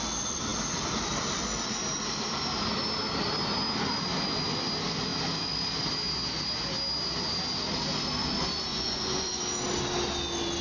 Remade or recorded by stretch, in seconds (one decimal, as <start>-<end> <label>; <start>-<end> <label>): 0.0-8.7 recorded; 8.7-9.4 remade; 9.4-10.6 recorded